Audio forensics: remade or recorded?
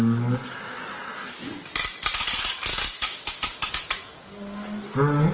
recorded